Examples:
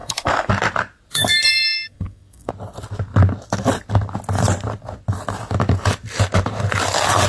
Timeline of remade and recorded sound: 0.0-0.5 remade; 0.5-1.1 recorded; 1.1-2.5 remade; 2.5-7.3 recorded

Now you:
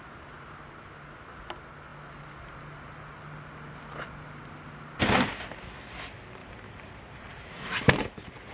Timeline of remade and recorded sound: 0.0-6.4 recorded; 6.4-7.9 remade; 7.9-8.5 recorded

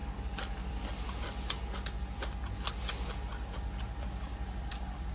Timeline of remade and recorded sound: 0.0-5.1 recorded

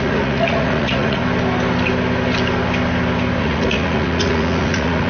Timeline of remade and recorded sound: 0.0-1.2 remade; 1.2-3.4 recorded; 3.4-5.1 remade

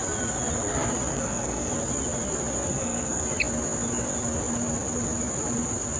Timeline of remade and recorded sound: 0.0-1.1 recorded; 1.1-1.7 remade; 1.7-2.7 recorded; 2.7-3.2 remade; 3.2-6.0 recorded

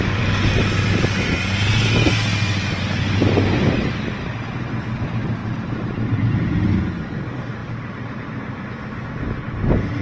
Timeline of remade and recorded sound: 0.0-5.4 recorded; 5.4-6.8 remade; 6.8-7.6 recorded; 7.6-8.2 remade; 8.2-10.0 recorded

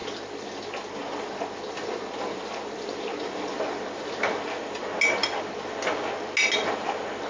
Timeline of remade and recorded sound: 0.0-7.3 recorded